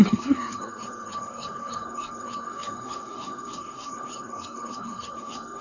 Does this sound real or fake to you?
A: fake